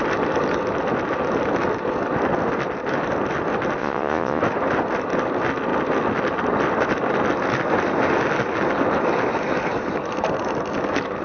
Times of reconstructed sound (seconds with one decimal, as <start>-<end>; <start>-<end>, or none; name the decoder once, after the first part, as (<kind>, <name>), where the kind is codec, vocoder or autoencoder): 3.8-4.4 (vocoder, Vocos)